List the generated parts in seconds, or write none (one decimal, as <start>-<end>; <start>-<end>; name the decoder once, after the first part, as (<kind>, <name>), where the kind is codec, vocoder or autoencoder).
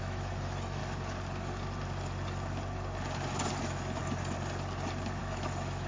0.0-0.8 (autoencoder, DAC-VAE); 3.6-4.0; 5.2-5.9